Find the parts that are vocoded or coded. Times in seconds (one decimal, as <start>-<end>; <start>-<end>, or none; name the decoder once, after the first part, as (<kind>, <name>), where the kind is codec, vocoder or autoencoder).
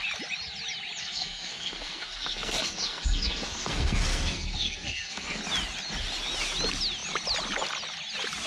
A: 1.0-5.4 (codec, SNAC)